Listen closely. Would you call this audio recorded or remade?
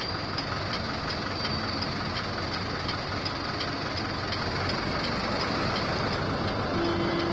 recorded